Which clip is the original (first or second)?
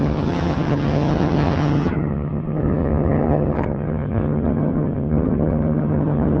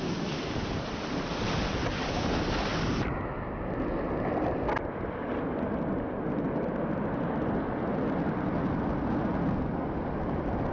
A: second